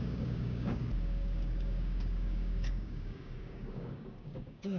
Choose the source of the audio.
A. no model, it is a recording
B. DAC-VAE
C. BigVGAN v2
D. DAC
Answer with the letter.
D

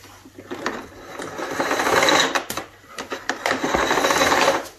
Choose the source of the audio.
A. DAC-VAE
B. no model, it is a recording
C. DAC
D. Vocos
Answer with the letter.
B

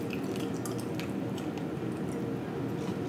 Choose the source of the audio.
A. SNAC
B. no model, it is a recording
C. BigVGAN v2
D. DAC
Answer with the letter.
B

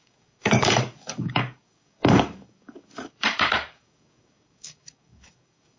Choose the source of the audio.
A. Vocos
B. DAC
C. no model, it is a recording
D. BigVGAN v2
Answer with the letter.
B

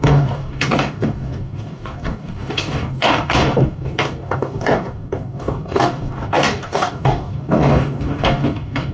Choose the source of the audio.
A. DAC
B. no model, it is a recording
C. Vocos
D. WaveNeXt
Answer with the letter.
A